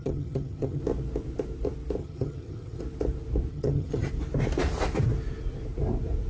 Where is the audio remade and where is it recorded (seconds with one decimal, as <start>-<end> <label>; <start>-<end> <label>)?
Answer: 0.0-0.8 remade; 0.8-2.0 recorded; 2.0-2.8 remade; 2.8-3.5 recorded; 3.5-4.1 remade; 4.1-6.3 recorded